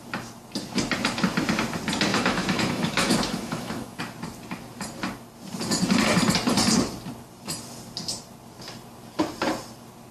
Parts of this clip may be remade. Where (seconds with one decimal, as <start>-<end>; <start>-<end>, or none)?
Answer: 2.1-4.0

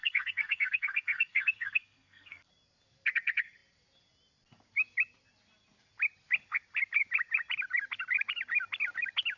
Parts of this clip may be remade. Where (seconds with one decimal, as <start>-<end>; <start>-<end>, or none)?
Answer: 0.0-2.5

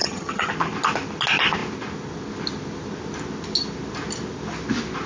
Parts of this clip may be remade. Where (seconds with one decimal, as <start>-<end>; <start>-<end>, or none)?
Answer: 0.0-0.5

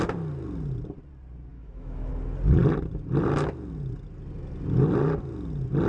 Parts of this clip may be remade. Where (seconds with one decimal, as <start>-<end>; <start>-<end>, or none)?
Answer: 1.5-2.1

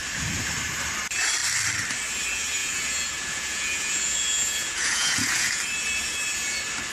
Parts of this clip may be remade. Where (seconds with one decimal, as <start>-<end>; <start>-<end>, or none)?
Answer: 2.6-5.6

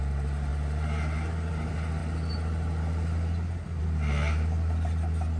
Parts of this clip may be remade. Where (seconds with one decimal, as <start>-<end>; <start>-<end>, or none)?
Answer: 0.0-2.0; 3.8-5.4

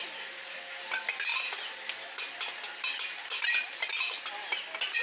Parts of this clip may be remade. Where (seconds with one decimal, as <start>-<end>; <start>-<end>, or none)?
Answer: none